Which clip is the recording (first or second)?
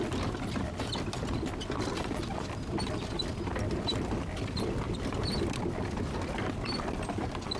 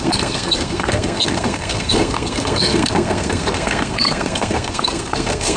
first